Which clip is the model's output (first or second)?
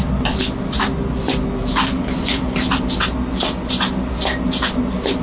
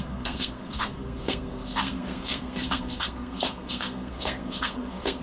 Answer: second